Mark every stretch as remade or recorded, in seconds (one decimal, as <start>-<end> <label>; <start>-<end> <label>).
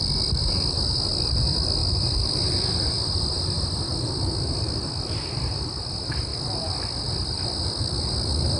0.0-8.6 recorded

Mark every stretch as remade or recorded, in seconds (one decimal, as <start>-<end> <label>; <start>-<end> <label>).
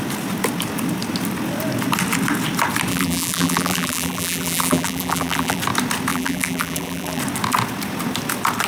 0.0-2.9 recorded; 2.9-5.6 remade; 5.6-6.1 recorded; 6.1-7.2 remade; 7.2-8.7 recorded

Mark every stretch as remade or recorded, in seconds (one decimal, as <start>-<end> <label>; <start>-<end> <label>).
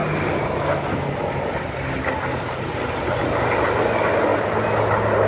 0.0-5.3 recorded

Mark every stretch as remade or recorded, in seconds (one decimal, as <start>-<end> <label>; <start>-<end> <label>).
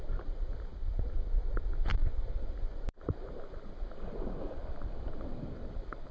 0.0-0.7 remade; 0.7-1.5 recorded; 1.5-6.1 remade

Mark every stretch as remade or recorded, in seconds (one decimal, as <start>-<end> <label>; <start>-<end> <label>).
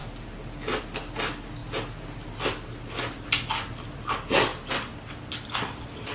0.0-0.8 remade; 0.8-1.6 recorded; 1.6-4.1 remade; 4.1-4.5 recorded; 4.5-5.3 remade; 5.3-6.1 recorded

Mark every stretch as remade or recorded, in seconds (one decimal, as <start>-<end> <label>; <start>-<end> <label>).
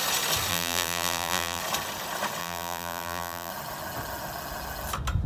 0.0-0.5 recorded; 0.5-1.6 remade; 1.6-2.4 recorded; 2.4-3.5 remade; 3.5-5.3 recorded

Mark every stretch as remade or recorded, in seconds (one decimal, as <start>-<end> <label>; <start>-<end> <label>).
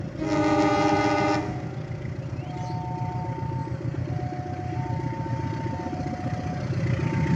0.0-7.4 recorded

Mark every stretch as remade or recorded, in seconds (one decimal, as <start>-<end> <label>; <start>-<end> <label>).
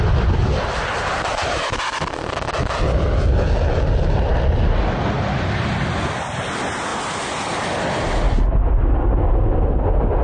0.0-10.2 recorded